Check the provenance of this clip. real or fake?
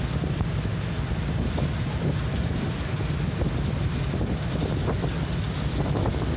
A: real